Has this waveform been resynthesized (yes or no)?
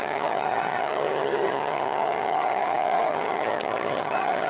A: yes